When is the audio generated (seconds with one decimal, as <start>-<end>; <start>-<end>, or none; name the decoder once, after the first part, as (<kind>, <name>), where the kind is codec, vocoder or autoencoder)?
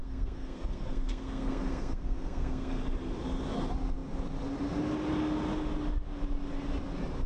0.0-2.8 (codec, SNAC)